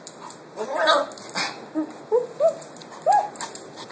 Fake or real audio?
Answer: real